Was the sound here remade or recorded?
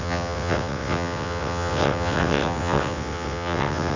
remade